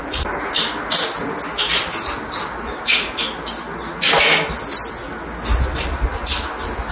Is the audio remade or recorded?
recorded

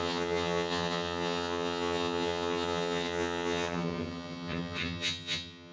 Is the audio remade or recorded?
remade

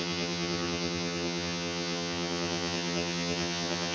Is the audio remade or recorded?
remade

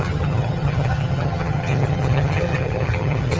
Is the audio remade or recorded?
remade